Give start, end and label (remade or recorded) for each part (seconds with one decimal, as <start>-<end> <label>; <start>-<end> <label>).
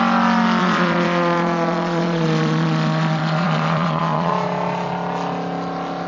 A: 0.0-0.6 recorded; 0.6-4.3 remade; 4.3-6.1 recorded